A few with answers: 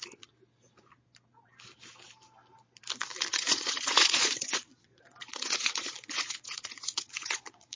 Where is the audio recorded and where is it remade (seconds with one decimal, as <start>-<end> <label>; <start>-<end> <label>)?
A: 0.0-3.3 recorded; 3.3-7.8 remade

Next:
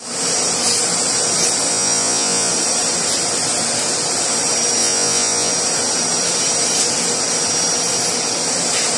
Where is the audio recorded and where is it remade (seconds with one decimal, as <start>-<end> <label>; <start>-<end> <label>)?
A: 0.0-1.7 recorded; 1.7-2.5 remade; 2.5-4.8 recorded; 4.8-5.5 remade; 5.5-9.0 recorded

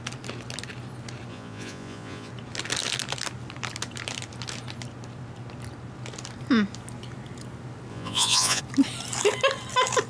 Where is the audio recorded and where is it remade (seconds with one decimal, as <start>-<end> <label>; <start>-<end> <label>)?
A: 0.0-1.3 recorded; 1.3-2.3 remade; 2.3-7.9 recorded; 7.9-8.6 remade; 8.6-10.1 recorded